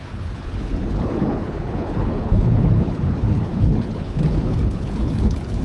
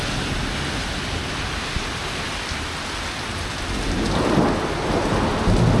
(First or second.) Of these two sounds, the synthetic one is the first